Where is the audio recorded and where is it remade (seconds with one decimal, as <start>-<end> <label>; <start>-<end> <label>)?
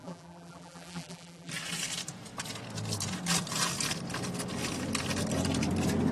0.0-1.5 remade; 1.5-6.1 recorded